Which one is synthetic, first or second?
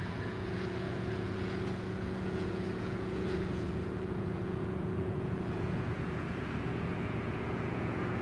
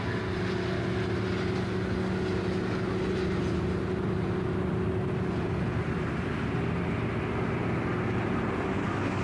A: first